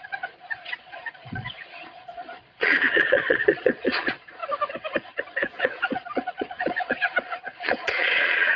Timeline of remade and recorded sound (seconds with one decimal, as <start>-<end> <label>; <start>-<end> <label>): 0.0-4.4 remade; 4.4-5.6 recorded; 5.6-8.6 remade